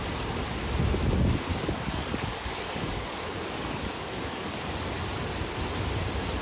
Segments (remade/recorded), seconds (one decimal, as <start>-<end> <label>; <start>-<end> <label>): 0.0-1.5 recorded; 1.5-4.6 remade; 4.6-6.4 recorded